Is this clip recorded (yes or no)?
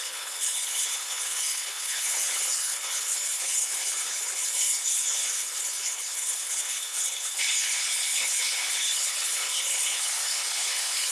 no